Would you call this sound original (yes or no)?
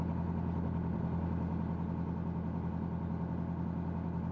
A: yes